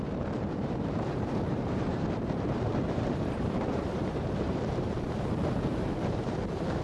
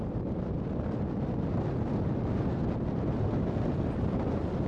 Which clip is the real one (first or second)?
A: second